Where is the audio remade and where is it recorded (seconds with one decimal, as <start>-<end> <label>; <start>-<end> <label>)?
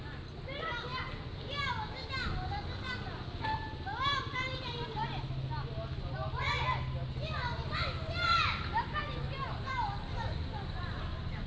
0.0-11.5 recorded